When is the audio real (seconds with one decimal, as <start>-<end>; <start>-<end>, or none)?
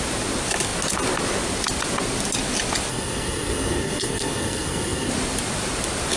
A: 0.0-2.9; 5.1-6.2